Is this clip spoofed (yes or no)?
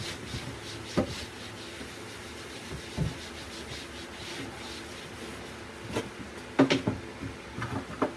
no